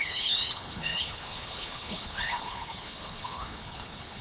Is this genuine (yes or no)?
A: no